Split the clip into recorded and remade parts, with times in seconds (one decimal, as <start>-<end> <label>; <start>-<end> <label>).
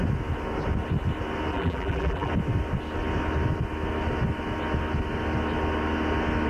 0.0-1.5 recorded; 1.5-2.3 remade; 2.3-6.5 recorded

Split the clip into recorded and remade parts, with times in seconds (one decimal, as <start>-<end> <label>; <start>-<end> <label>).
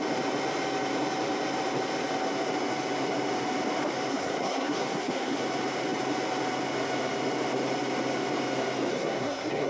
0.0-4.1 recorded; 4.1-5.4 remade; 5.4-8.9 recorded; 8.9-9.7 remade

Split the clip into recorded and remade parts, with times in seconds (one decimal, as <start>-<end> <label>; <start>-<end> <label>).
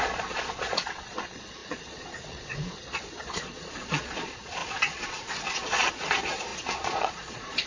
0.0-7.7 remade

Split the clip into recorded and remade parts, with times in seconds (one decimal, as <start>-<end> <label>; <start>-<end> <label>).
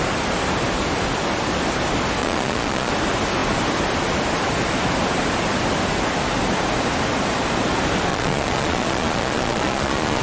0.0-2.2 recorded; 2.2-2.9 remade; 2.9-8.1 recorded; 8.1-10.2 remade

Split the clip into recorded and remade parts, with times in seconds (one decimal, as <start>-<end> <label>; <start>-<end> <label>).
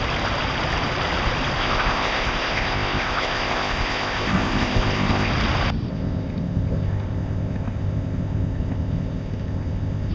0.0-1.6 recorded; 1.6-5.3 remade; 5.3-5.9 recorded; 5.9-10.1 remade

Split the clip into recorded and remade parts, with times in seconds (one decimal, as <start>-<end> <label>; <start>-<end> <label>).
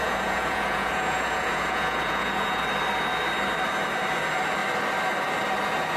0.0-2.6 remade; 2.6-6.0 recorded